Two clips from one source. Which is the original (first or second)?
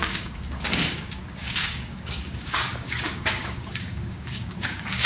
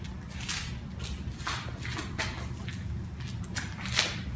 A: second